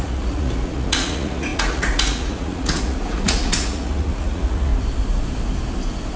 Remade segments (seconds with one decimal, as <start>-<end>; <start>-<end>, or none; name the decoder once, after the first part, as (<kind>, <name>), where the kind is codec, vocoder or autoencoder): 0.0-4.7 (vocoder, Vocos)